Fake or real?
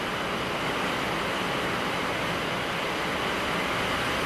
real